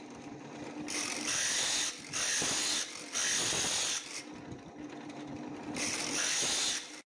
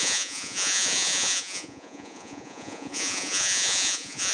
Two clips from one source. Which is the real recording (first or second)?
first